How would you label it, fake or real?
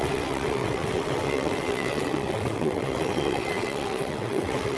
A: fake